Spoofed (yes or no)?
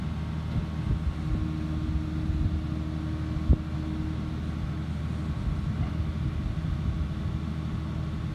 no